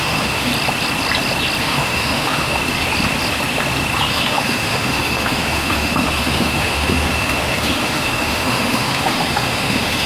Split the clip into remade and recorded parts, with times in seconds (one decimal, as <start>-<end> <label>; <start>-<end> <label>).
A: 0.0-0.5 remade; 0.5-1.6 recorded; 1.6-2.6 remade; 2.6-4.1 recorded; 4.1-10.1 remade